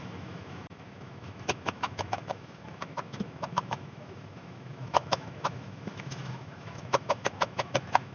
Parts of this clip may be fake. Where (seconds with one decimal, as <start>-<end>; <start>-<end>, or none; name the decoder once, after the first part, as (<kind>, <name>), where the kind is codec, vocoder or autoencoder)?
0.0-8.1 (autoencoder, DAC-VAE)